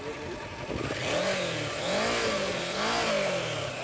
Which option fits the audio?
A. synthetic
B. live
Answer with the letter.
B